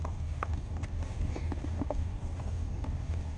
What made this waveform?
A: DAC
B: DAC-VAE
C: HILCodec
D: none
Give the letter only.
A